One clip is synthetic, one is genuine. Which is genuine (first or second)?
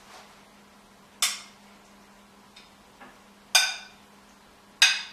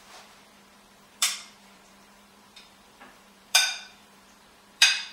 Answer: first